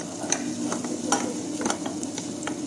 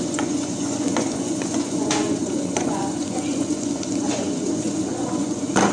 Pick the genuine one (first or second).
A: first